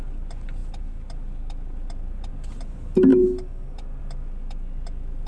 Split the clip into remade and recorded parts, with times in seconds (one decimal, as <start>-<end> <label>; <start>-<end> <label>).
0.0-5.3 recorded